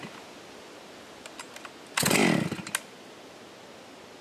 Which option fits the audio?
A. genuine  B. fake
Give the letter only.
A